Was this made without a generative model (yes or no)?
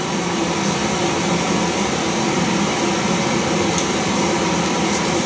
yes